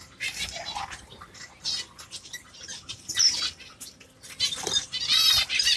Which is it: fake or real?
real